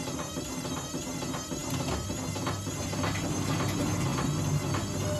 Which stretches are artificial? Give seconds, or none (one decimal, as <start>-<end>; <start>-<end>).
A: none